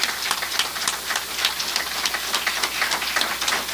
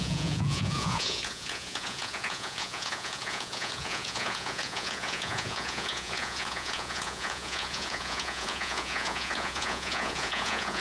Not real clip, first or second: second